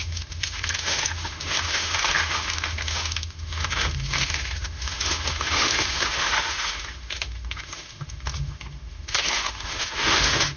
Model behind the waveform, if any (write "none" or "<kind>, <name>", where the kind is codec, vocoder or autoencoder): autoencoder, DAC-VAE